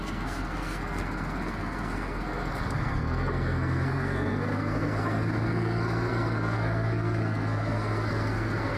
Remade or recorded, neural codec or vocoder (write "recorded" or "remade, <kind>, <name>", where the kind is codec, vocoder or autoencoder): remade, codec, SNAC